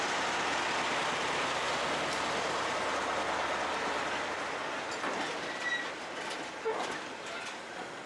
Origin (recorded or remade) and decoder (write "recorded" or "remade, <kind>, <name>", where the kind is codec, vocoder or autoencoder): recorded